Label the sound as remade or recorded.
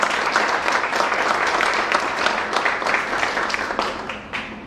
recorded